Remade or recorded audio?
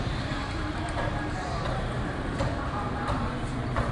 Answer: remade